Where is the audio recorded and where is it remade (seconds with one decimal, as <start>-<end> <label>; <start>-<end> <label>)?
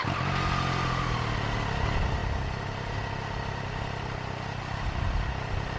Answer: 0.0-5.8 recorded